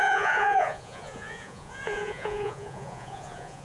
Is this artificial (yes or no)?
yes